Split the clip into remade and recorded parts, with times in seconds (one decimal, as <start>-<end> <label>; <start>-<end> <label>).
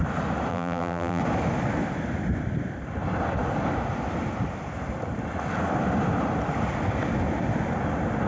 0.0-0.5 recorded; 0.5-1.2 remade; 1.2-8.3 recorded